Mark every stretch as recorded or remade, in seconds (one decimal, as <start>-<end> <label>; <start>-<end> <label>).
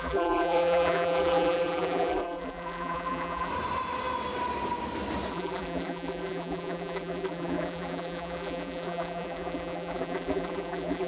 0.0-3.5 remade; 3.5-5.3 recorded; 5.3-11.1 remade